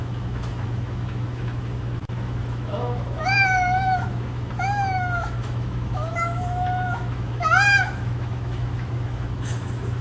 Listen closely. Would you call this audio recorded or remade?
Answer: remade